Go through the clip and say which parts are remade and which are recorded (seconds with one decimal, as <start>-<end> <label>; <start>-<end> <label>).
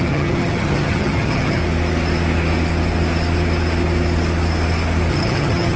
0.0-1.6 remade; 1.6-5.1 recorded; 5.1-5.8 remade